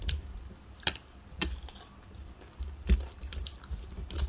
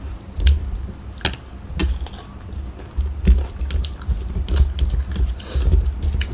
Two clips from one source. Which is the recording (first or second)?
second